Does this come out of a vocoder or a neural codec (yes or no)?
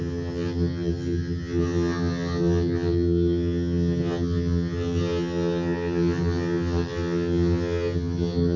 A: yes